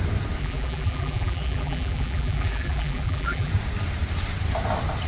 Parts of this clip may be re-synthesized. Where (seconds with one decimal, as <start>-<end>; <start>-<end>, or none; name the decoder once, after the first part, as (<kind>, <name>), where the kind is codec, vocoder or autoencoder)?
0.4-3.5 (vocoder, BigVGAN v2)